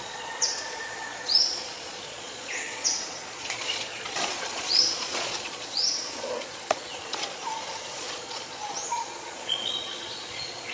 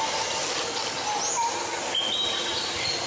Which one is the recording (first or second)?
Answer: second